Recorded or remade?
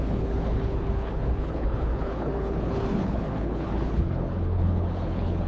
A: remade